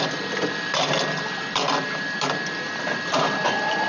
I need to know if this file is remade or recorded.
remade